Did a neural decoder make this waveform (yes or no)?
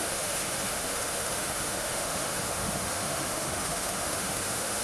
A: yes